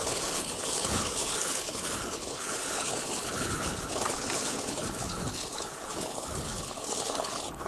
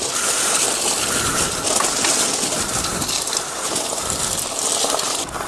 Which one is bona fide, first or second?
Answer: second